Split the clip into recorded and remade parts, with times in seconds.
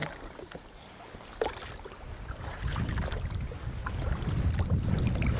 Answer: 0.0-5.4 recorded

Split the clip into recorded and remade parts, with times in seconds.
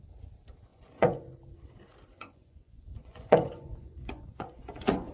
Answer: 0.0-0.7 recorded; 0.7-1.2 remade; 1.2-2.1 recorded; 2.1-5.1 remade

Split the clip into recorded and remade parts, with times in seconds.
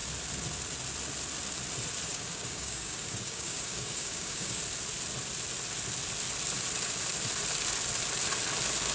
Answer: 0.0-2.1 recorded; 2.1-4.6 remade; 4.6-8.9 recorded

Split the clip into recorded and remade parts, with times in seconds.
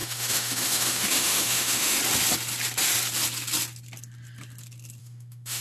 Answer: 0.0-2.0 remade; 2.0-5.0 recorded; 5.0-5.6 remade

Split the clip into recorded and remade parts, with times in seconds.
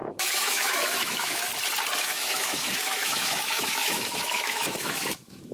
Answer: 0.0-1.5 remade; 1.5-2.0 recorded; 2.0-5.5 remade